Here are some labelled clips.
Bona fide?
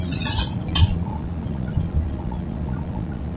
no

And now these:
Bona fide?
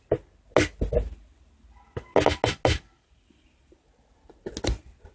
yes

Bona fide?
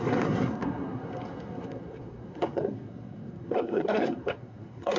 no